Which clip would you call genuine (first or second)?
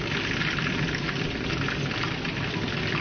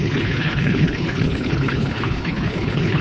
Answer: first